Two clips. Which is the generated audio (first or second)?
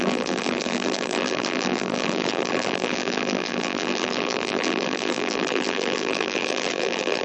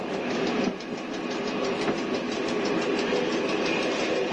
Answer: first